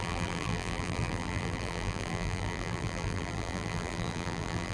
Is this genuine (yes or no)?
no